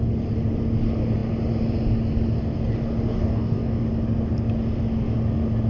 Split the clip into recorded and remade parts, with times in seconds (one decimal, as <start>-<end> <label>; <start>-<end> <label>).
0.0-3.1 recorded; 3.1-3.9 remade; 3.9-5.7 recorded